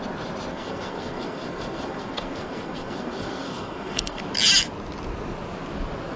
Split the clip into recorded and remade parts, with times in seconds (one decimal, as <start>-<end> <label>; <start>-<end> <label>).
0.0-0.5 recorded; 0.5-4.2 remade; 4.2-6.2 recorded